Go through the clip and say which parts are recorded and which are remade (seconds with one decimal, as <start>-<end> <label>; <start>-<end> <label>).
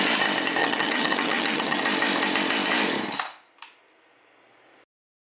0.0-0.6 recorded; 0.6-1.8 remade; 1.8-5.4 recorded